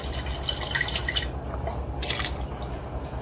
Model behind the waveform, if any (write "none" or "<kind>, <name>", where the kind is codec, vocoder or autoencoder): none